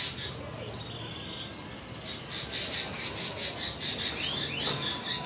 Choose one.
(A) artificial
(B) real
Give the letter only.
B